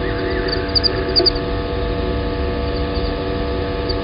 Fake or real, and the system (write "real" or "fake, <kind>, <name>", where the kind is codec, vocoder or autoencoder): real